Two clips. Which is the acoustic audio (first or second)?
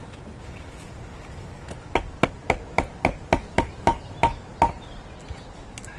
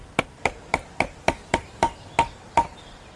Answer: first